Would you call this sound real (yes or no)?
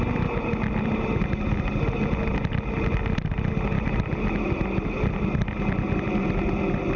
yes